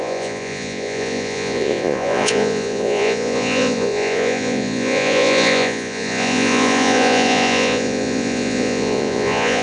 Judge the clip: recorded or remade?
remade